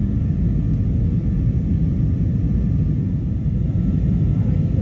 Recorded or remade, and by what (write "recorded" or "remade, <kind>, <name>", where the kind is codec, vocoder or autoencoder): recorded